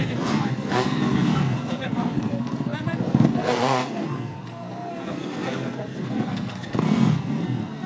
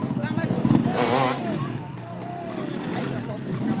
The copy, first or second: first